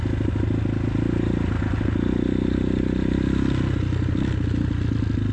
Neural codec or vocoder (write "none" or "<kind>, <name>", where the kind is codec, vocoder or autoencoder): none